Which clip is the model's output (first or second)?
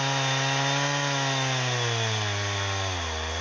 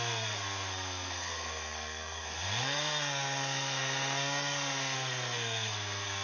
second